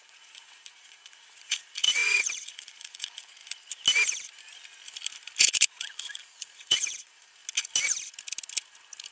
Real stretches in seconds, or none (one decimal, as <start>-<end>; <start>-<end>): 3.4-5.4; 7.4-9.1